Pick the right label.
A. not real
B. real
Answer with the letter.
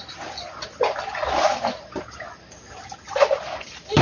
B